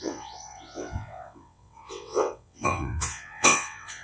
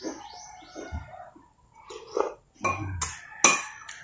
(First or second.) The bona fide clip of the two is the second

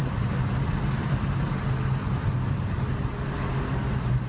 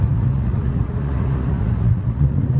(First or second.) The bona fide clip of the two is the first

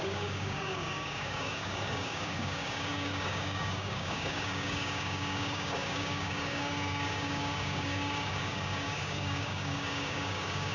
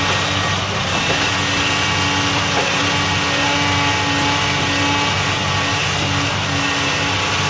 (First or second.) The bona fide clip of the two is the second